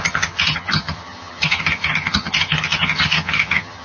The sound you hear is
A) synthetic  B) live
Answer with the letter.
A